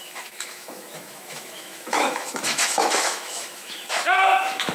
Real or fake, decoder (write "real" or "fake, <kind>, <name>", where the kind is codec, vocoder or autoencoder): fake, autoencoder, DAC-VAE